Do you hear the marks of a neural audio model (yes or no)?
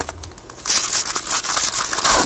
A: yes